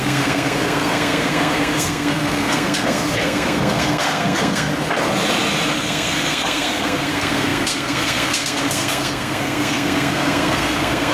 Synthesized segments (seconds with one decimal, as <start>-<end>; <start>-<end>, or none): 0.0-4.7; 5.8-11.1